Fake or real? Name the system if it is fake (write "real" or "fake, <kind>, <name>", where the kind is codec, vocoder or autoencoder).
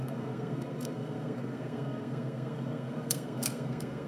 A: fake, codec, SNAC